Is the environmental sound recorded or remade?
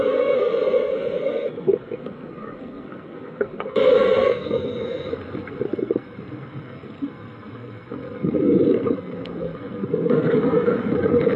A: remade